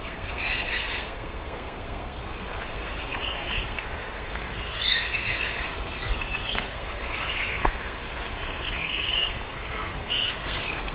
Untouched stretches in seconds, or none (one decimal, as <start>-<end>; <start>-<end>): none